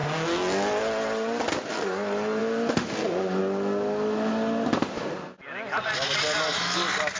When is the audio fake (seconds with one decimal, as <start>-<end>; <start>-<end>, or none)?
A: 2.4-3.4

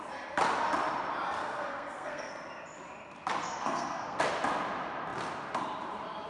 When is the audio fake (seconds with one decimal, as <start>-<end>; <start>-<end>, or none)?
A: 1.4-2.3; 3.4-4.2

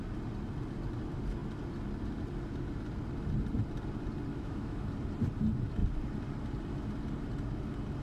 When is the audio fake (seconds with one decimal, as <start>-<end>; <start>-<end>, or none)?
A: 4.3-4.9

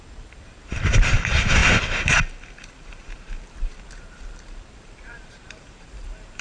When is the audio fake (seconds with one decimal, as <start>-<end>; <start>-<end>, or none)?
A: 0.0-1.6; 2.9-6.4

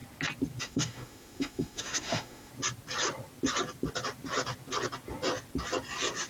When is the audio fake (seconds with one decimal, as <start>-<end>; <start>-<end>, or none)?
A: 0.6-2.5